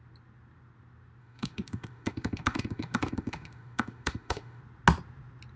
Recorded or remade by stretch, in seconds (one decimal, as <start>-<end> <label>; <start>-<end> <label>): 0.0-1.2 recorded; 1.2-4.6 remade; 4.6-5.6 recorded